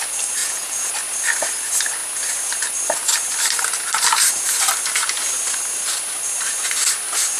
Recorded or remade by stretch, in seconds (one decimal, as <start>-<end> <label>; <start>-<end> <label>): 0.0-0.4 recorded; 0.4-0.9 remade; 0.9-7.4 recorded